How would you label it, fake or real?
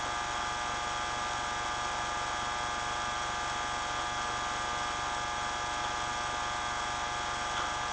real